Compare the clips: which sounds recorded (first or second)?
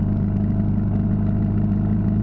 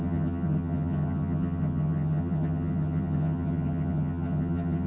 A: first